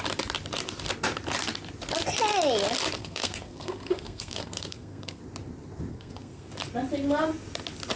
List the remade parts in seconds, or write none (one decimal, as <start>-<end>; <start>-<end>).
3.0-5.2; 5.9-6.5